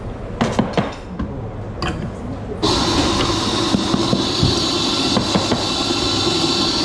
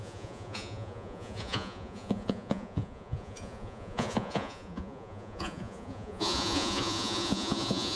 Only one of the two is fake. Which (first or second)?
second